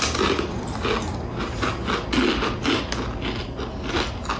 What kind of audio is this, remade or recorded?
recorded